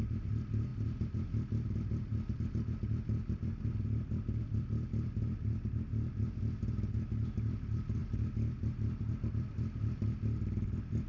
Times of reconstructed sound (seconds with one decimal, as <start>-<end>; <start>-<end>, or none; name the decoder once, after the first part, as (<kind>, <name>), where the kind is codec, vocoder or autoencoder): none